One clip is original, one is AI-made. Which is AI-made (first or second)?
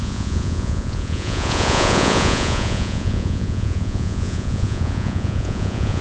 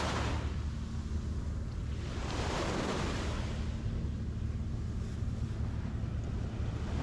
first